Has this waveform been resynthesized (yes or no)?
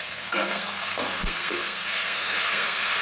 yes